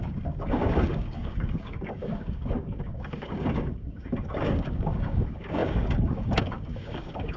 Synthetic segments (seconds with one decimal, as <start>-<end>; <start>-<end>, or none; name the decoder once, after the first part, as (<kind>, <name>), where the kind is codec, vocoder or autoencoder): 0.0-7.4 (codec, DAC)